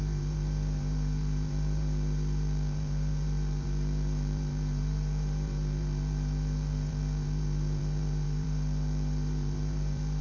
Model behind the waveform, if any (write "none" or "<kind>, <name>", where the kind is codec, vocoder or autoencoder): vocoder, BigVGAN v2